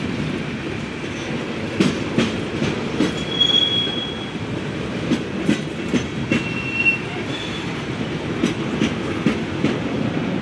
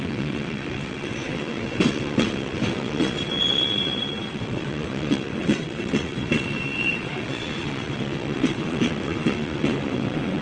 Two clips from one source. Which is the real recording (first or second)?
first